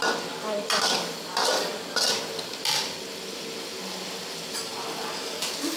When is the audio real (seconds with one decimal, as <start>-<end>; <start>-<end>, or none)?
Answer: 1.7-2.3; 4.7-5.8